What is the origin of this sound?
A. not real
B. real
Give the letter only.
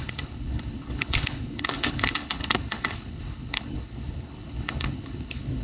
A